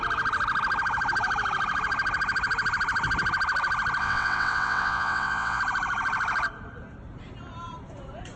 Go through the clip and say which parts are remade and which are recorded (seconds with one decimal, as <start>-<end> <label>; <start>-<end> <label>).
0.0-4.0 recorded; 4.0-5.6 remade; 5.6-8.4 recorded

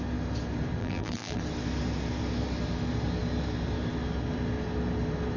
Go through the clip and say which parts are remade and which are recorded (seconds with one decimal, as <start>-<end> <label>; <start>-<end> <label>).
0.0-0.8 recorded; 0.8-1.4 remade; 1.4-5.4 recorded

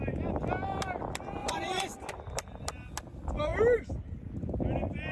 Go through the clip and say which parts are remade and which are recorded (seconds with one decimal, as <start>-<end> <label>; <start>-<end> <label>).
0.0-1.4 recorded; 1.4-2.1 remade; 2.1-5.1 recorded

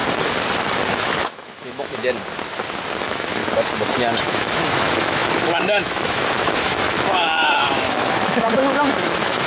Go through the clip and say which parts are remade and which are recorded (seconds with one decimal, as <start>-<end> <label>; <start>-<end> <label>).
0.0-0.9 recorded; 0.9-2.0 remade; 2.0-3.0 recorded; 3.0-3.4 remade; 3.4-4.2 recorded; 4.2-9.5 remade